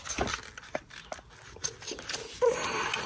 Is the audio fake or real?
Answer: real